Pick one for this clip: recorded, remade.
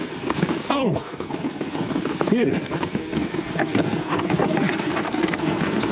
remade